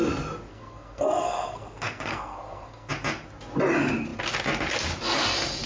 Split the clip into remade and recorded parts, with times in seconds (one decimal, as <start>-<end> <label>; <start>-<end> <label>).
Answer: 0.0-0.5 recorded; 0.5-2.9 remade; 2.9-5.7 recorded